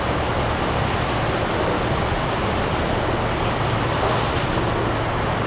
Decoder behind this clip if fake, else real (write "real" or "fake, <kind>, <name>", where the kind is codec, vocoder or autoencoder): real